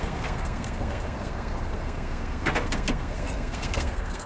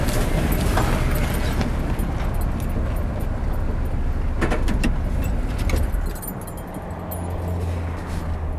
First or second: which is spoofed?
first